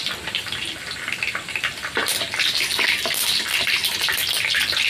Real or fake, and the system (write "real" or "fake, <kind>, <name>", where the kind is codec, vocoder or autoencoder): real